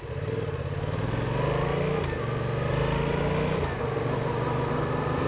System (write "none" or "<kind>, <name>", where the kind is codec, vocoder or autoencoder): none